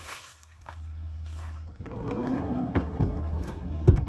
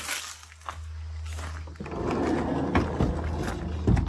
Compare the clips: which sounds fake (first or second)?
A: first